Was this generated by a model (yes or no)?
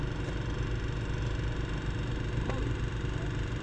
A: no